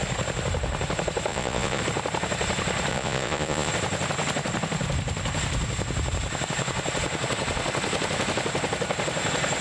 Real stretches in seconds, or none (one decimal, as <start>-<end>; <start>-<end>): 0.0-1.3; 1.8-2.9; 3.7-9.6